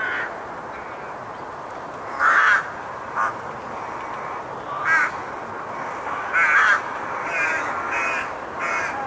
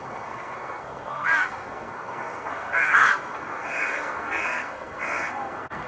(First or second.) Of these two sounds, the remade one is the second